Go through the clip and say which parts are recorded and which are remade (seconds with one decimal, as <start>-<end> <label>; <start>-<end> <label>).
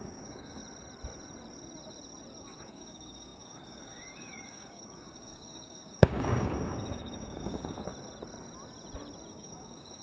0.0-0.6 remade; 0.6-2.4 recorded; 2.4-7.9 remade; 7.9-9.3 recorded; 9.3-10.0 remade